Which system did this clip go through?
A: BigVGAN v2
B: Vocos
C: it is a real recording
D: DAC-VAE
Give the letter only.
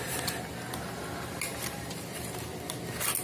C